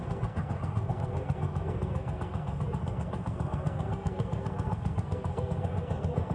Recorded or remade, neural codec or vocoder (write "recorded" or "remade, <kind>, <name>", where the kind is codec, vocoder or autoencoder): remade, codec, SNAC